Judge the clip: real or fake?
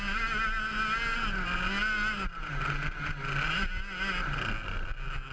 real